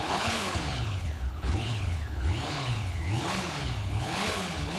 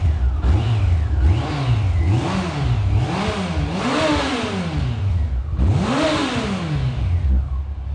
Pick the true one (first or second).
second